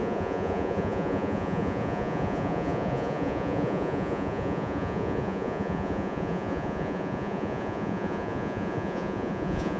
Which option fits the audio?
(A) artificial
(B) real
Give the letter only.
A